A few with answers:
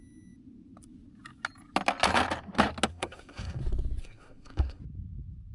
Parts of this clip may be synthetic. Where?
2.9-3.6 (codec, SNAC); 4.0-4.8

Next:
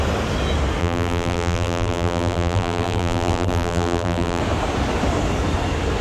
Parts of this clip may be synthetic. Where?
0.8-4.4 (vocoder, BigVGAN v2)

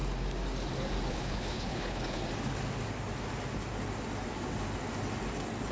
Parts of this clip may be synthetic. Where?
1.1-2.2 (codec, HILCodec)

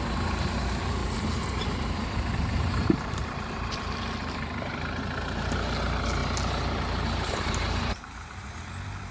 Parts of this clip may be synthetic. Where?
1.0-3.6 (vocoder, BigVGAN v2); 6.2-8.5